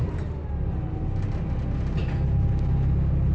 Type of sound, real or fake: real